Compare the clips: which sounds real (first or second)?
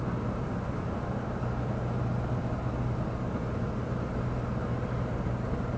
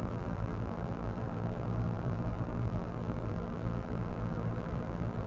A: first